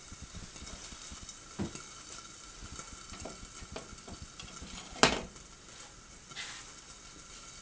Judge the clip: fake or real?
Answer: real